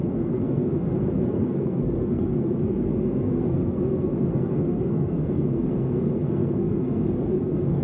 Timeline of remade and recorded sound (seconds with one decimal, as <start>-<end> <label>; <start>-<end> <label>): 0.0-7.8 remade